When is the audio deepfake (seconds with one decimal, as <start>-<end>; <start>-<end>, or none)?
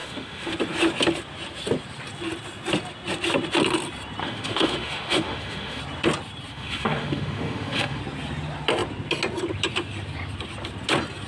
0.0-0.5; 4.2-5.8; 6.5-8.0